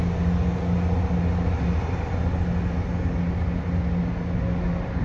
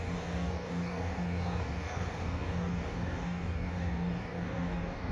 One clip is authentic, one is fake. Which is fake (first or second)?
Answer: second